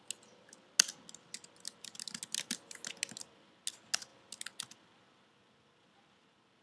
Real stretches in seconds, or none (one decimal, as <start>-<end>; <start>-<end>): 0.0-6.6